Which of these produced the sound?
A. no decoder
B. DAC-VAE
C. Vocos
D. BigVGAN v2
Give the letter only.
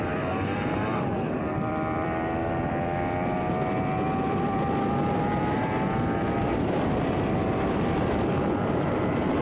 D